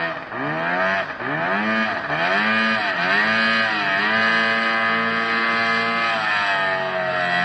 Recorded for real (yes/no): yes